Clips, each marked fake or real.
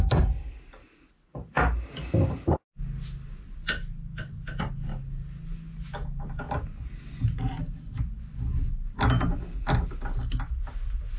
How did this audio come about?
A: real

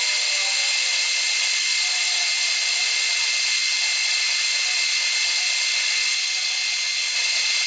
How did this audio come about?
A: real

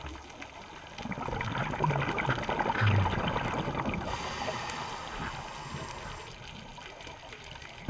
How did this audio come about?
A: real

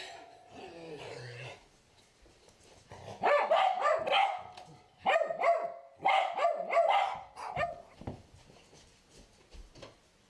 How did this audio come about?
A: real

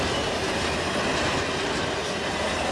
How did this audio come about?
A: real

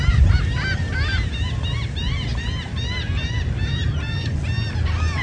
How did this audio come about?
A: real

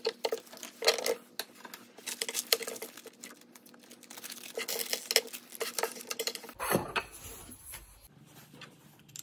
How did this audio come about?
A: real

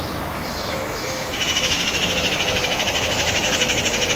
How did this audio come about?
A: fake